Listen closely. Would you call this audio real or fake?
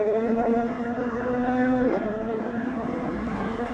fake